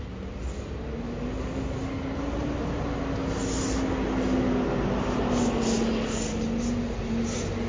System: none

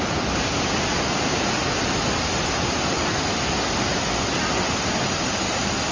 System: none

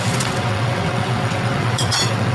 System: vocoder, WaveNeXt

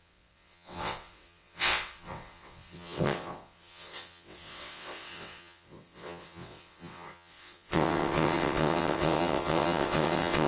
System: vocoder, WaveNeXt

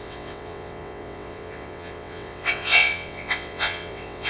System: vocoder, WaveNeXt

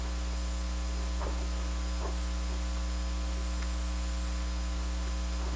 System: none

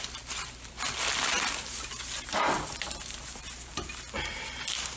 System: none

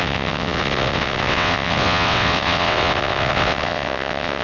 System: vocoder, WaveNeXt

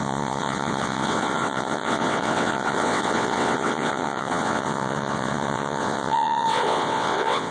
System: vocoder, WaveNeXt